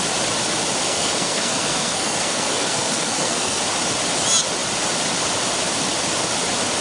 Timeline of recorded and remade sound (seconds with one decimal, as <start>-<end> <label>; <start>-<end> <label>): 0.0-0.8 recorded; 0.8-3.6 remade; 3.6-6.8 recorded